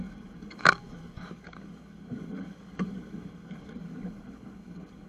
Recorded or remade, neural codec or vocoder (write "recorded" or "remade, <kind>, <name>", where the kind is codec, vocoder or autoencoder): remade, codec, DAC